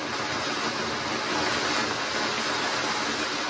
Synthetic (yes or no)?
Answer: no